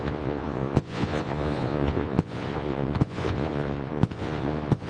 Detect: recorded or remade remade